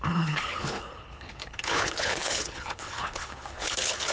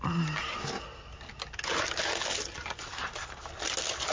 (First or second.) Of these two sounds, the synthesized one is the first